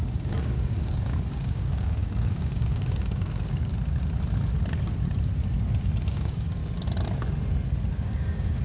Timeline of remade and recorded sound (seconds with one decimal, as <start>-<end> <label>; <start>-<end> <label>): 0.0-3.7 remade; 3.7-6.1 recorded; 6.1-6.6 remade; 6.6-7.9 recorded; 7.9-8.6 remade